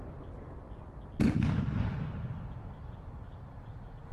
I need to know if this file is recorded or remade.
recorded